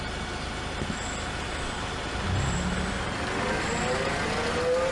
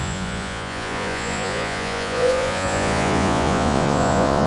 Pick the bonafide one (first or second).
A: first